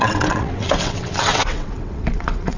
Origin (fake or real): fake